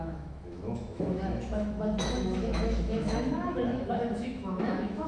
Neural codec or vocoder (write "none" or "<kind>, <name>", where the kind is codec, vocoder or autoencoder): autoencoder, DAC-VAE